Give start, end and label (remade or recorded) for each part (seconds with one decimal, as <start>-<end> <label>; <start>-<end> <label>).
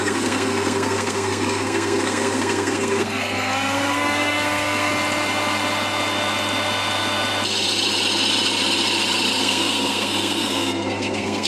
0.0-4.9 remade; 4.9-9.4 recorded; 9.4-11.5 remade